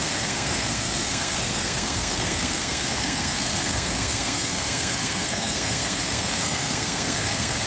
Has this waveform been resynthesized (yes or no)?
yes